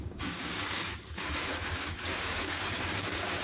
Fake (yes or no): yes